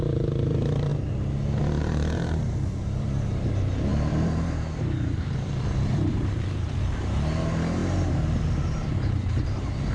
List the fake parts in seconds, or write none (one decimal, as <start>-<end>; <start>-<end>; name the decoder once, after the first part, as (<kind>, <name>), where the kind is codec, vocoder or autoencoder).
0.0-0.9 (vocoder, BigVGAN v2); 1.8-9.9